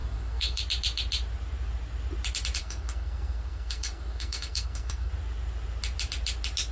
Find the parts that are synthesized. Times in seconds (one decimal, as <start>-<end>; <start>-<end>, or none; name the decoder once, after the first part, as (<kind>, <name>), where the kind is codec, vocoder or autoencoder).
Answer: 0.0-0.6 (codec, SNAC); 2.6-5.1